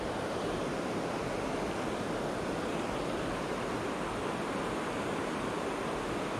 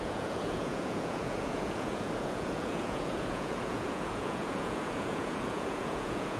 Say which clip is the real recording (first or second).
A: first